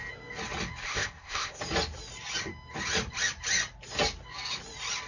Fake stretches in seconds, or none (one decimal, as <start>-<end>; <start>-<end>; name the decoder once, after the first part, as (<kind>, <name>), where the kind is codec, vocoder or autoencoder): 0.8-1.6 (codec, ZipCodec)